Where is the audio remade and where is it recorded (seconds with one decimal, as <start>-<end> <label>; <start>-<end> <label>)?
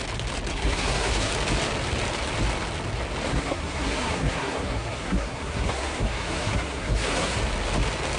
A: 0.0-0.5 recorded; 0.5-1.3 remade; 1.3-3.3 recorded; 3.3-7.4 remade; 7.4-8.2 recorded